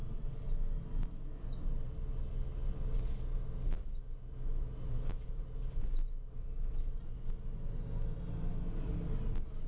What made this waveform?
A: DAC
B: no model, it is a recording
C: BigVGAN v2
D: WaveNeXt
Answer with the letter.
B